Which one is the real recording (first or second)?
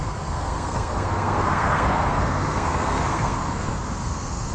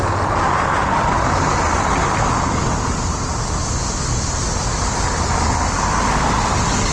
second